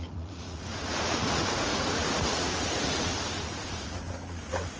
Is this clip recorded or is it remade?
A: remade